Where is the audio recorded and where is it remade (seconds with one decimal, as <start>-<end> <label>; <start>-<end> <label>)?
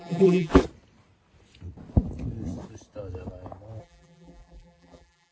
0.0-0.6 remade; 0.6-3.8 recorded; 3.8-5.3 remade